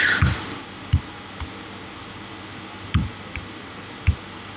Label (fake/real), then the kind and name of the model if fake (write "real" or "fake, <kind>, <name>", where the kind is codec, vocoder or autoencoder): real